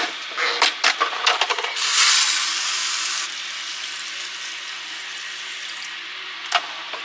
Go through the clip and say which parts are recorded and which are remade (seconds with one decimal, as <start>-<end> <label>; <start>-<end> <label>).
0.0-1.5 recorded; 1.5-2.1 remade; 2.1-7.0 recorded